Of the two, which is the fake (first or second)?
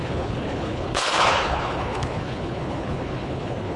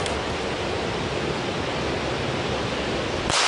first